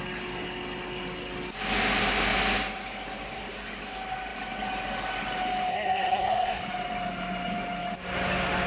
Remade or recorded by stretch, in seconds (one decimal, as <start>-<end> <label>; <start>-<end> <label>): 0.0-5.7 recorded; 5.7-6.6 remade; 6.6-8.7 recorded